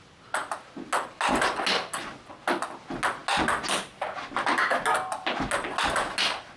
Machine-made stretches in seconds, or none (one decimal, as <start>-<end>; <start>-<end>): none